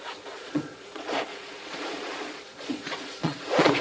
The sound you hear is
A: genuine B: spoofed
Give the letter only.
B